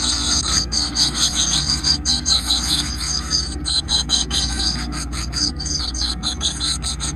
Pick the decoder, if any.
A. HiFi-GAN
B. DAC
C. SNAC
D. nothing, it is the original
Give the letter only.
C